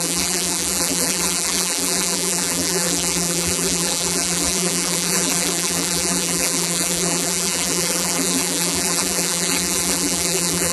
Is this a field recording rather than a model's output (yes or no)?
no